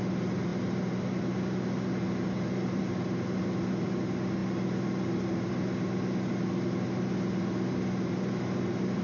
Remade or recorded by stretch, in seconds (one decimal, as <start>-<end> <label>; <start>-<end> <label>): 0.0-9.0 recorded